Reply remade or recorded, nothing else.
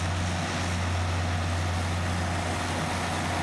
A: recorded